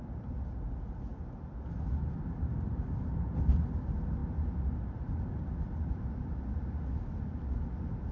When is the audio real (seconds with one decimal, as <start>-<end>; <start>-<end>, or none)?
0.0-8.1